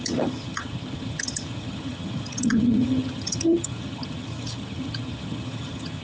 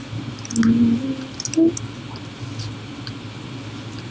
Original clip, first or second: second